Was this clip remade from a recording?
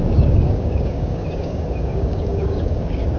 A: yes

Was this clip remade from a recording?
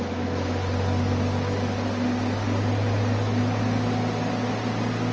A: no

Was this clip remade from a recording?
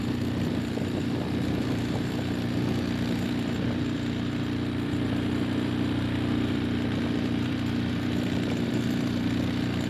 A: yes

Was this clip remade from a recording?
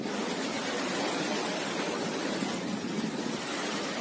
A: no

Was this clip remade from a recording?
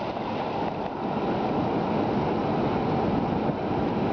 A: no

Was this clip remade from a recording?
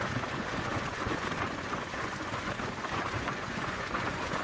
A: yes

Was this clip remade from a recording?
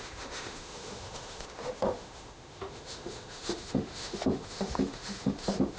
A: yes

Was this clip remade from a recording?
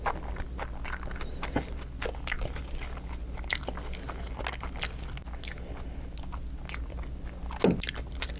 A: no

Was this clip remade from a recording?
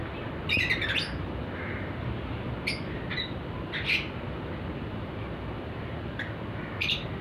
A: no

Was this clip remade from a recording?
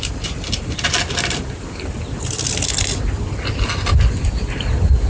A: no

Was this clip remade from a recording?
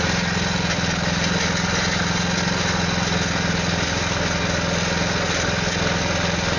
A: no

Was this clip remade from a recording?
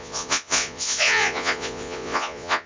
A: yes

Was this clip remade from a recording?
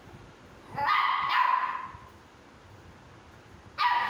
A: no